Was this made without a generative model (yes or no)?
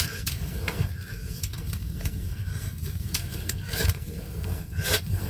no